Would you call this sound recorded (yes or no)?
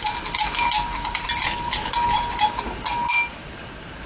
yes